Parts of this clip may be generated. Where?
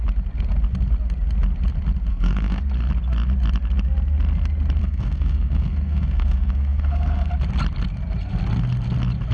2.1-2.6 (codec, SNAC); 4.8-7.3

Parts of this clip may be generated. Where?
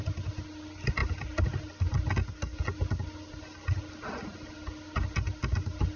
none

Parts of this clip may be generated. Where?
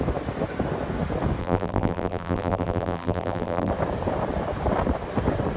1.4-3.7 (vocoder, BigVGAN v2)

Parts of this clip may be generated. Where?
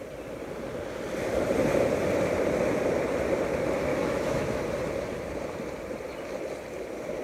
3.9-4.6 (autoencoder, DAC-VAE)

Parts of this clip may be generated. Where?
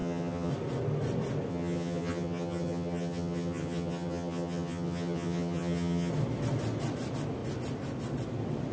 0.0-0.5 (vocoder, HiFi-GAN); 1.5-6.1